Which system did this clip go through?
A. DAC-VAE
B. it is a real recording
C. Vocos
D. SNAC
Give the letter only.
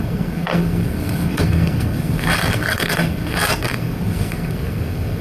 D